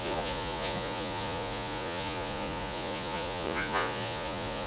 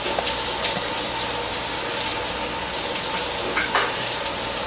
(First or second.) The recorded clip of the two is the second